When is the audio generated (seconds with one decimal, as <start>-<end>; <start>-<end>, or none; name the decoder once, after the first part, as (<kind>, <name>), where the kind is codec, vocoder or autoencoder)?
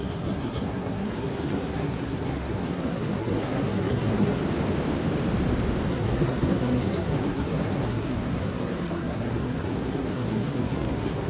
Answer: 0.0-4.4 (codec, SNAC); 5.9-11.3